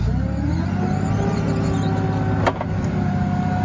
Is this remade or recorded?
recorded